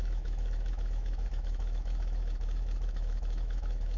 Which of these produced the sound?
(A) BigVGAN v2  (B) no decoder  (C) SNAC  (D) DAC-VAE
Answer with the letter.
D